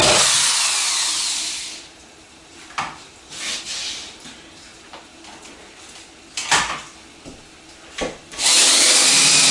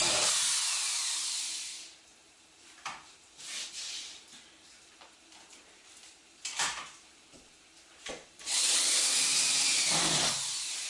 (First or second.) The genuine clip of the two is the first